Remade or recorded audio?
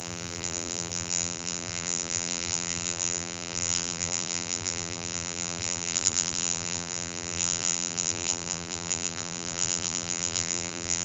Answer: remade